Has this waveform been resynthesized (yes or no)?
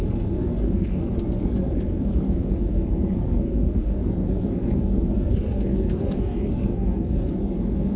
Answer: yes